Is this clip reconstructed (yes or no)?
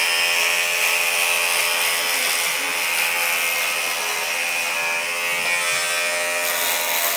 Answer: no